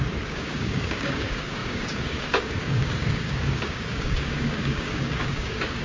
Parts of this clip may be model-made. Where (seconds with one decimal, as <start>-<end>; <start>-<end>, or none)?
0.0-5.8